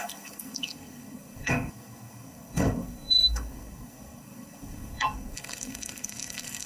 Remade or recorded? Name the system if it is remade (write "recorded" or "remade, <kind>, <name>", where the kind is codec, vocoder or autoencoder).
remade, codec, SNAC